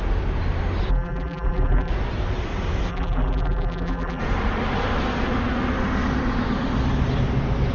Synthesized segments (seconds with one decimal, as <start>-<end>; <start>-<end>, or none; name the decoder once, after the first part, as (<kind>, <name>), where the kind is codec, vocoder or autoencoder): 0.9-1.9 (vocoder, BigVGAN v2); 2.9-4.2